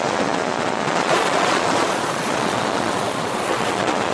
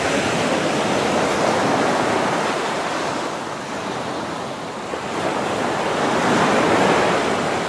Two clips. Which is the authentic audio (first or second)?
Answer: second